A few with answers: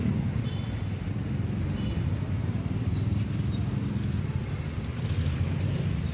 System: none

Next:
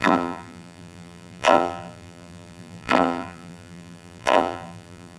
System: vocoder, BigVGAN v2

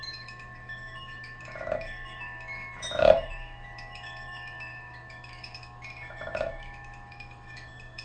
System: autoencoder, DAC-VAE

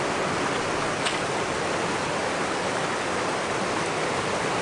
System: none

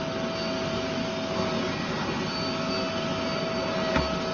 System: none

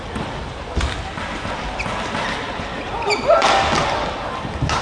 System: none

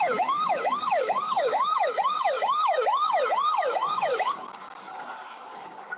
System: codec, DAC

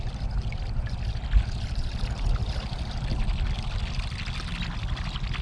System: none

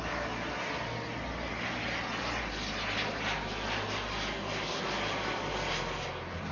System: none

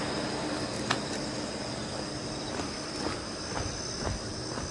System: none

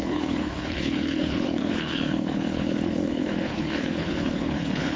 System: codec, HILCodec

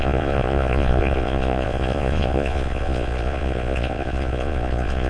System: vocoder, Vocos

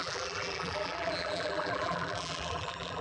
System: vocoder, BigVGAN v2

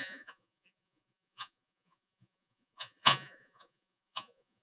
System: vocoder, Vocos